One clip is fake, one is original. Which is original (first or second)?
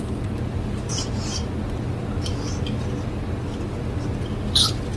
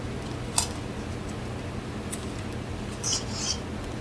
second